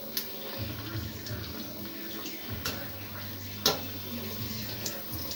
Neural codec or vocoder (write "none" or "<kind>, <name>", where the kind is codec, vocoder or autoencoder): none